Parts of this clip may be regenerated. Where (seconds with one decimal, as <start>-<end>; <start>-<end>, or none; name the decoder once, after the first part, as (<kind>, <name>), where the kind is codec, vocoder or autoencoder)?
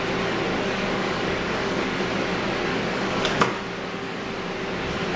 0.5-2.0 (codec, DAC); 2.7-4.2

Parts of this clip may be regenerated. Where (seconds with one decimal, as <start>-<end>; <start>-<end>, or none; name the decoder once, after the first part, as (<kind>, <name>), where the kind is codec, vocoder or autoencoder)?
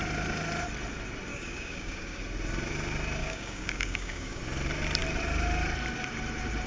1.3-2.2 (codec, DAC); 3.2-4.4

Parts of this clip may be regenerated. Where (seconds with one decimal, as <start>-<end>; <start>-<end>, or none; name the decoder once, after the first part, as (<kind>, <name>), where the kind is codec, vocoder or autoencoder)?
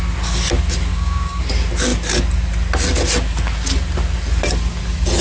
0.9-1.4 (codec, DAC)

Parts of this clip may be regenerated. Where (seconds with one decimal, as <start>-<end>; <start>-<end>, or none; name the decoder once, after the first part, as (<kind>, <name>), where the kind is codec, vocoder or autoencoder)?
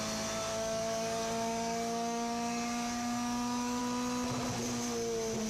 0.5-3.8 (codec, DAC)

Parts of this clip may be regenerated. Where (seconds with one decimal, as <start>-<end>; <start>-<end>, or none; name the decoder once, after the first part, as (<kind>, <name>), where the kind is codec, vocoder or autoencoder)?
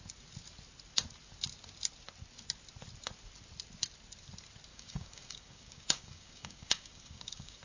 4.7-7.6 (codec, DAC)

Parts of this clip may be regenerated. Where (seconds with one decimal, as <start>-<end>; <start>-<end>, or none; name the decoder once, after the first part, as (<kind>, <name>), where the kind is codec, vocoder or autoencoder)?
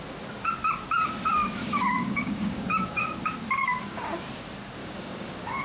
1.6-3.0 (codec, DAC); 3.6-4.2; 4.8-5.6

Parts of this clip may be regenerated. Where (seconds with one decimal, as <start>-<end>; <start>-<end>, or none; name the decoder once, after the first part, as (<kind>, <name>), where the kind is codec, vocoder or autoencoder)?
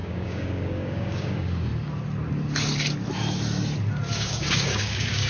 0.0-1.7 (codec, DAC); 4.1-5.3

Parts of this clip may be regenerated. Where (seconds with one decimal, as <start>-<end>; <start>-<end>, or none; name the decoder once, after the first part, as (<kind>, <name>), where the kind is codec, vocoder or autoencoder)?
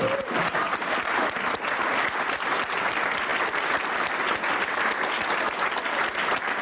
none